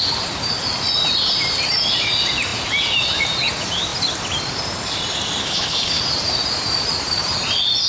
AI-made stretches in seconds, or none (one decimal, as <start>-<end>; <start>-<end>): 5.4-6.0